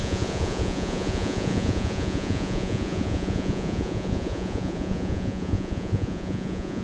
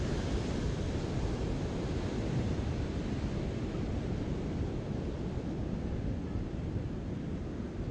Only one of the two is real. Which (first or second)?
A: second